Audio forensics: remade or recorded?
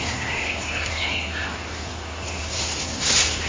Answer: remade